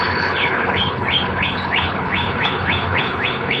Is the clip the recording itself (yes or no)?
no